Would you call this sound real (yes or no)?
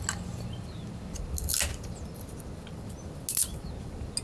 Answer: yes